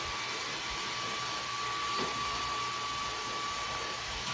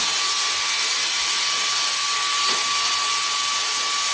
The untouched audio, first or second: second